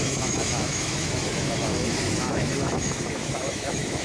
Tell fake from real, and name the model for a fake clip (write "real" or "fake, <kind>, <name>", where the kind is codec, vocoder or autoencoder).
fake, autoencoder, DAC-VAE